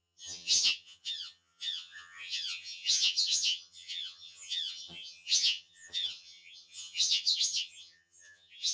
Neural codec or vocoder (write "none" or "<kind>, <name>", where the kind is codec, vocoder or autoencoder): vocoder, HiFi-GAN